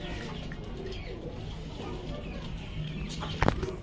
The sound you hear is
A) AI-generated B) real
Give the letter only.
B